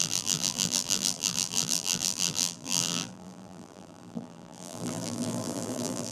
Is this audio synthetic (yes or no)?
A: yes